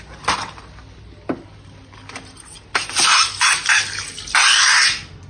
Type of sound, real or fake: real